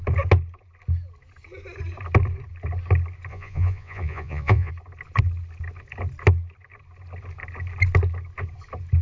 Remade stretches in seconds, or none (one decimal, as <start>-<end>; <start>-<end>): 3.3-4.7